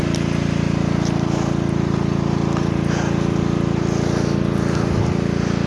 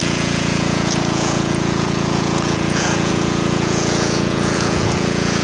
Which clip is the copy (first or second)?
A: second